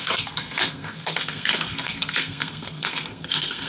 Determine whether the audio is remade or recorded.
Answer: remade